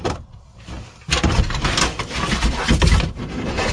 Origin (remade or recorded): recorded